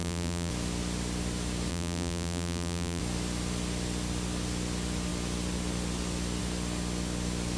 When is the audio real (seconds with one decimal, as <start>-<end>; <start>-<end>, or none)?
0.5-1.7; 3.0-7.6